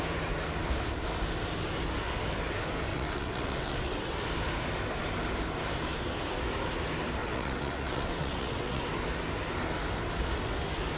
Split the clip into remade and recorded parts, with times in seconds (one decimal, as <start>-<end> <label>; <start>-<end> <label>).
0.0-2.9 recorded; 2.9-4.1 remade; 4.1-7.2 recorded; 7.2-8.9 remade; 8.9-11.0 recorded